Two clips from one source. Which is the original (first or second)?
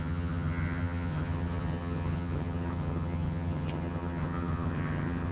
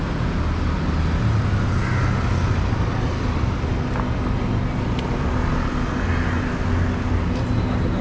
second